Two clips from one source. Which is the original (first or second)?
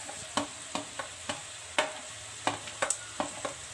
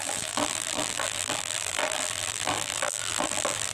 first